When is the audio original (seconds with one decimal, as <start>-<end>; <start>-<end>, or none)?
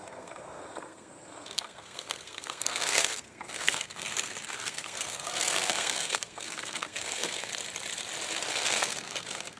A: 7.5-8.5